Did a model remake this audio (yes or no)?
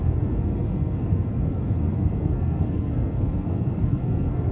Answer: yes